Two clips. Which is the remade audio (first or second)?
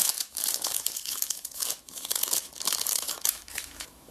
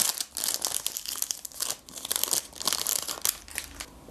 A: first